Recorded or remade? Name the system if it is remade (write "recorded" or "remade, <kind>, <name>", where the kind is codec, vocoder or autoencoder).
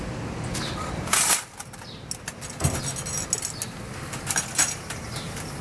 recorded